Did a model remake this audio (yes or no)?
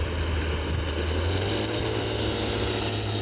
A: no